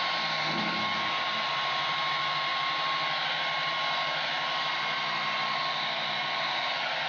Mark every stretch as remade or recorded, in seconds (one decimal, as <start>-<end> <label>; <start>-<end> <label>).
0.0-7.1 recorded